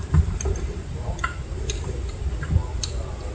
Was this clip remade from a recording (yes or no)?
no